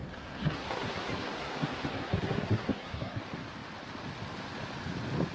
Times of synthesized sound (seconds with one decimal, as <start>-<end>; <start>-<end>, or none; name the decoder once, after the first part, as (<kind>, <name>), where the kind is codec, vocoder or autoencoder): 0.0-3.2 (codec, SNAC)